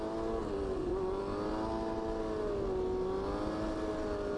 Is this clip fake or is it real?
real